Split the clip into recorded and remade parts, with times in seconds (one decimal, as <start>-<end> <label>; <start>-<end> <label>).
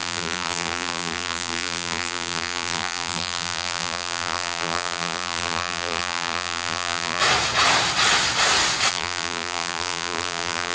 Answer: 0.0-7.2 remade; 7.2-8.9 recorded; 8.9-10.7 remade